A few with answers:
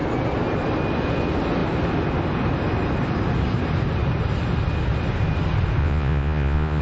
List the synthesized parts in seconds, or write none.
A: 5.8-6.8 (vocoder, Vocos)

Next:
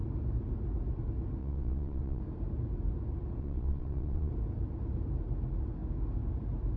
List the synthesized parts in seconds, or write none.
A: 1.4-2.2 (vocoder, Vocos); 3.4-4.3

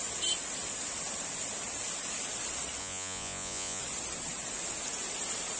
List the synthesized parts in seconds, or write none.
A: 2.8-3.8 (vocoder, Vocos)

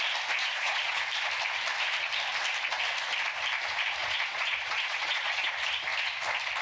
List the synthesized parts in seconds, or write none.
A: 0.4-1.0 (vocoder, Vocos); 4.0-5.5

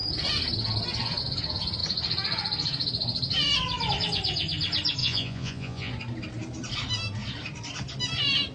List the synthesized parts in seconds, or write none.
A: 5.0-5.9 (vocoder, Vocos)